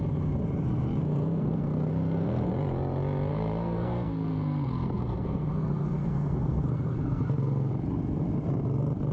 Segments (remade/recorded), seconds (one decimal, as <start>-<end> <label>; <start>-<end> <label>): 0.0-1.0 recorded; 1.0-2.5 remade; 2.5-3.3 recorded; 3.3-7.7 remade; 7.7-9.1 recorded